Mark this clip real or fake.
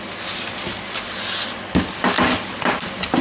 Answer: real